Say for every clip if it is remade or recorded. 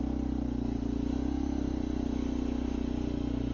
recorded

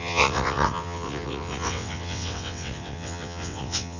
remade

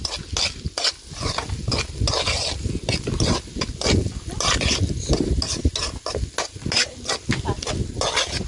recorded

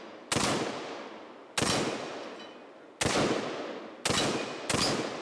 recorded